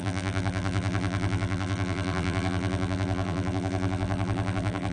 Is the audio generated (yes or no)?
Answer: yes